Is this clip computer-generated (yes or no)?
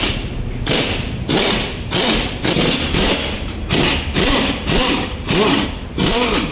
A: no